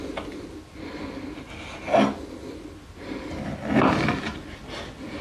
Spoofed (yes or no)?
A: no